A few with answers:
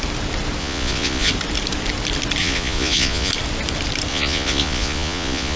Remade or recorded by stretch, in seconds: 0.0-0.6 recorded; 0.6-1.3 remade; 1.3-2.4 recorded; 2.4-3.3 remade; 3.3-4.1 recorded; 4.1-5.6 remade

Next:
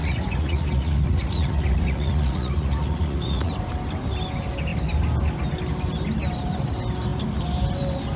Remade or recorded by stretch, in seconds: 0.0-3.5 remade; 3.5-8.2 recorded

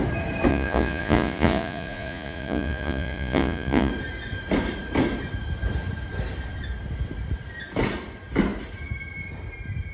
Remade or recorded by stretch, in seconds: 0.0-0.5 recorded; 0.5-3.9 remade; 3.9-9.9 recorded

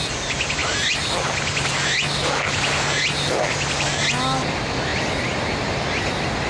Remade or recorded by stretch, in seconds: 0.0-6.5 recorded